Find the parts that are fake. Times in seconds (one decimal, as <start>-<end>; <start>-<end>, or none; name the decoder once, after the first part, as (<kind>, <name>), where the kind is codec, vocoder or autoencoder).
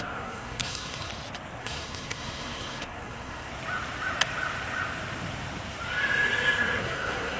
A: 0.0-1.1 (codec, SNAC); 1.6-3.5; 6.8-7.4